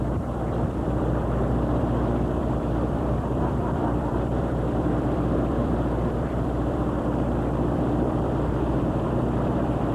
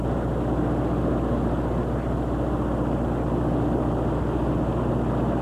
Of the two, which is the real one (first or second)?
second